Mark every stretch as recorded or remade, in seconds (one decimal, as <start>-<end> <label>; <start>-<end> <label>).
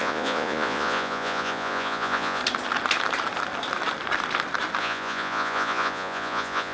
0.0-2.4 remade; 2.4-4.8 recorded; 4.8-6.7 remade